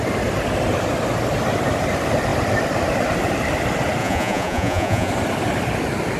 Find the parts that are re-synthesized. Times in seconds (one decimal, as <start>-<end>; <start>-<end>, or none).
4.0-5.1